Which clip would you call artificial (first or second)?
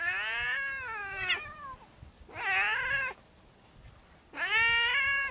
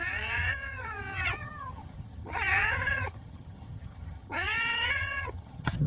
second